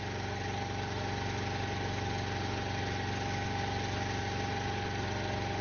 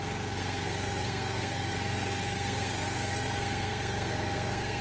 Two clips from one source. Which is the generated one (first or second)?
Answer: second